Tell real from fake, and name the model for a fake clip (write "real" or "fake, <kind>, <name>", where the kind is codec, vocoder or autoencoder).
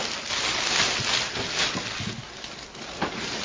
real